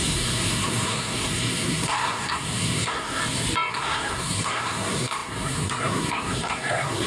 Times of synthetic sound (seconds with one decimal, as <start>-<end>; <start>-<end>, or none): 0.0-3.2; 3.7-7.1

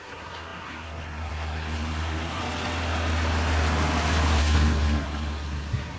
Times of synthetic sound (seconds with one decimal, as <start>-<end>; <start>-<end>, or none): 0.0-2.4; 4.4-6.0

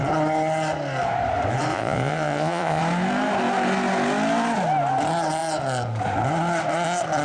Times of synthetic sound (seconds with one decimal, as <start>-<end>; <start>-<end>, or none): 1.7-2.8